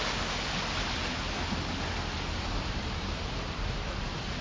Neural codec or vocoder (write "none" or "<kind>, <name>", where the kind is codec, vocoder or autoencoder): none